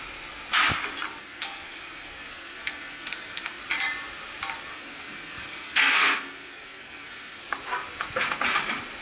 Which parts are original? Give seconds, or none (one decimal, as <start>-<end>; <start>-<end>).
0.0-1.2; 3.6-4.7; 7.4-9.0